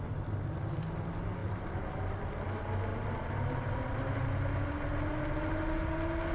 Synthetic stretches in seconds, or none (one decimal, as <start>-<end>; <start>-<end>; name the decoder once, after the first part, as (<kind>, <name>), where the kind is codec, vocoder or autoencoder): 1.4-2.2 (vocoder, BigVGAN v2); 2.9-4.3